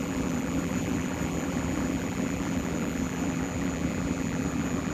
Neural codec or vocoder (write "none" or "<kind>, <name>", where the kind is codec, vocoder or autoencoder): vocoder, BigVGAN v2